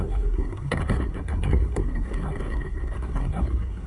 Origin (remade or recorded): remade